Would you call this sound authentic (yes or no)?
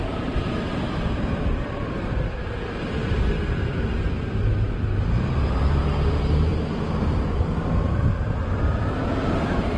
no